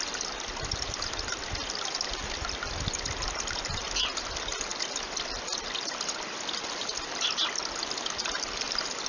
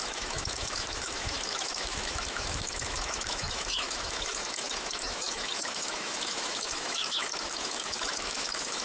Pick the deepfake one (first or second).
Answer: second